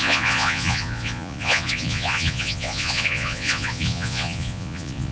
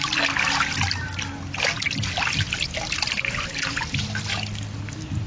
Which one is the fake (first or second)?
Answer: first